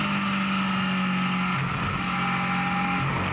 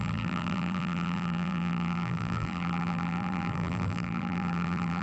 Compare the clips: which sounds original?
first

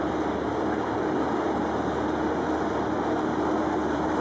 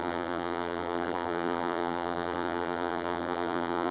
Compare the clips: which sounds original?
first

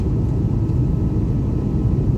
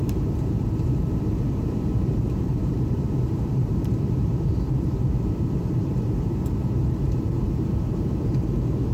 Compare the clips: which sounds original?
first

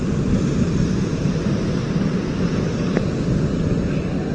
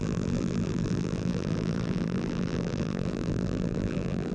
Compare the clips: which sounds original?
first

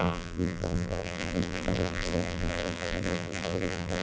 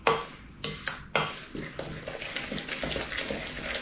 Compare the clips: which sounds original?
second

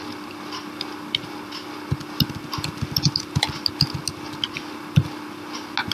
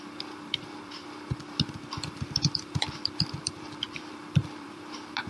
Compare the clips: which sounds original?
first